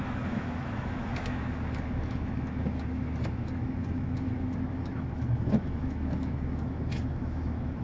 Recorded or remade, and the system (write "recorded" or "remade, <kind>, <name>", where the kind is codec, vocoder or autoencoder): remade, autoencoder, DAC-VAE